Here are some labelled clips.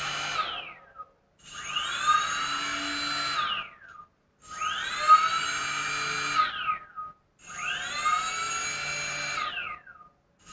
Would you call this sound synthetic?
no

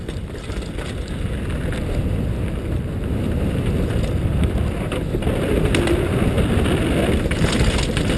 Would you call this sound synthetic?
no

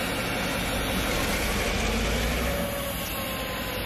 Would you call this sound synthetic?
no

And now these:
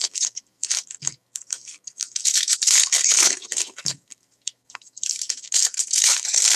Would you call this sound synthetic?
yes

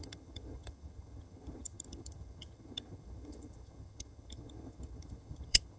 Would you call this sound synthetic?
yes